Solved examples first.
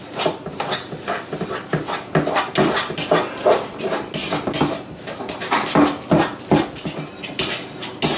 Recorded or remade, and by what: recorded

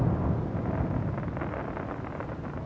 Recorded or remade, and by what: recorded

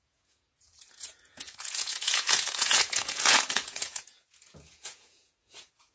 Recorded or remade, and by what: remade, vocoder, Vocos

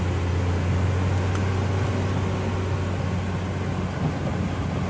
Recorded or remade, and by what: recorded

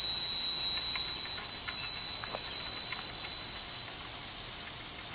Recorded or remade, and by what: recorded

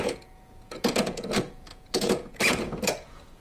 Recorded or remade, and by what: remade, vocoder, Vocos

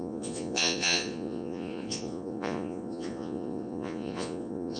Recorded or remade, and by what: remade, vocoder, Vocos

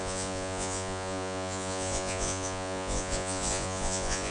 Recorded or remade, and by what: remade, vocoder, Vocos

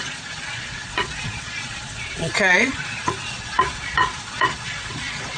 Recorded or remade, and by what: remade, vocoder, Vocos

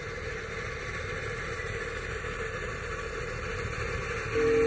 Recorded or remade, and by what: recorded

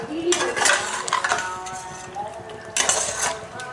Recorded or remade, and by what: recorded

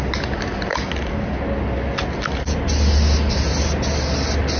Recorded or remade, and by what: recorded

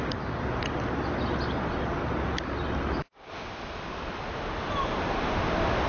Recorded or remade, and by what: recorded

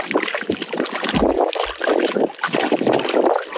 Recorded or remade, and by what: recorded